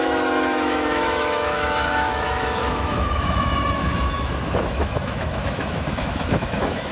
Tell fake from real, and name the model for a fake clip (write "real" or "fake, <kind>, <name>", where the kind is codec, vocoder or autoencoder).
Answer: fake, autoencoder, DAC-VAE